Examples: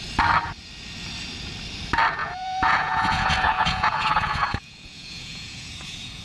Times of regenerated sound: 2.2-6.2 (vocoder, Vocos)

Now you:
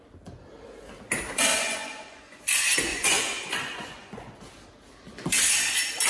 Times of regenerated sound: 1.5-2.4 (vocoder, Vocos); 2.9-4.3

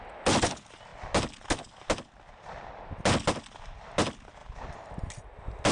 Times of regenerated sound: none

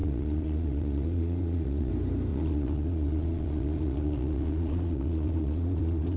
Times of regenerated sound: 0.0-1.9 (vocoder, Vocos); 2.3-6.2